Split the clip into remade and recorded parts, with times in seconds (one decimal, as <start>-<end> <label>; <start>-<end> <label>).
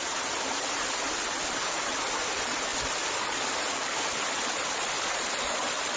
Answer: 0.0-6.0 recorded